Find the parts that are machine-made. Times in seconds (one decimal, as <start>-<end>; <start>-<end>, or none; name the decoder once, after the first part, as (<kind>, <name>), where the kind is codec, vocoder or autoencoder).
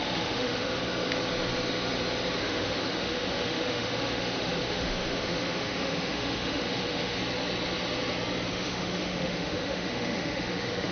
0.0-0.8 (autoencoder, DAC-VAE); 2.4-7.2; 8.5-10.9